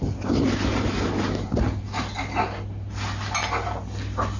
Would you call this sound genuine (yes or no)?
yes